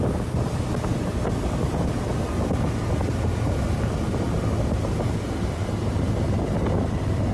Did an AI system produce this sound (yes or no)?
no